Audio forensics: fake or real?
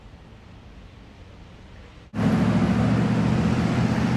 real